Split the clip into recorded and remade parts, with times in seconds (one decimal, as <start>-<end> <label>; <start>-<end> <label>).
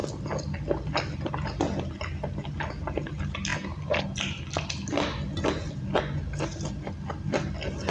0.0-7.9 recorded